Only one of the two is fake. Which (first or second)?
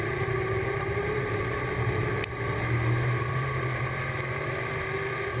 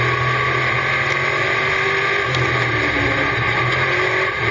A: first